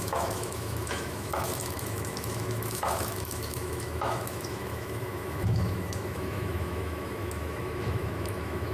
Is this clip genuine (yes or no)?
no